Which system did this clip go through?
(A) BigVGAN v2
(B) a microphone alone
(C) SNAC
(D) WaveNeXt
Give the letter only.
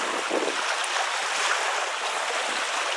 A